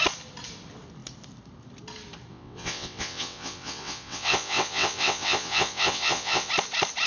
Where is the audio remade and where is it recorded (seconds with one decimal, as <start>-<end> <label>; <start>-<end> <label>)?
0.0-2.3 recorded; 2.3-6.5 remade; 6.5-7.1 recorded